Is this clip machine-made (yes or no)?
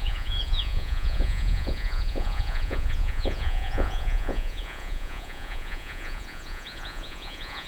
yes